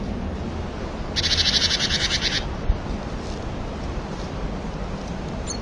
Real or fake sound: real